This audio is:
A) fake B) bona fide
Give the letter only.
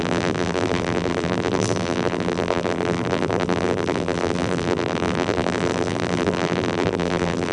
A